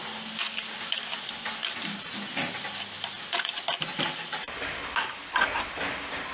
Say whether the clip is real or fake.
real